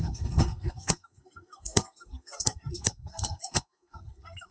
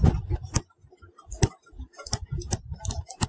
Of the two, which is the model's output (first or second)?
first